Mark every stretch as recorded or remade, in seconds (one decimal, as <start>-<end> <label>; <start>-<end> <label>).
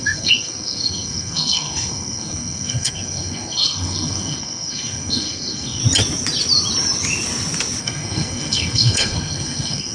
0.0-5.8 remade; 5.8-7.8 recorded; 7.8-9.9 remade